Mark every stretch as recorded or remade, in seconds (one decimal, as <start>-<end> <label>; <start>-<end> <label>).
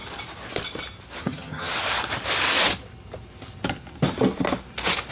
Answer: 0.0-1.2 recorded; 1.2-1.7 remade; 1.7-5.1 recorded